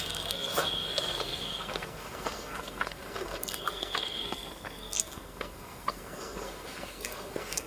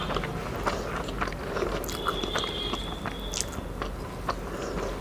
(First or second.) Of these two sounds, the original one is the second